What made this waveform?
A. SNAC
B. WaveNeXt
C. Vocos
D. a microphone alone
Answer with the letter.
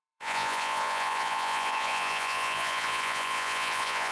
C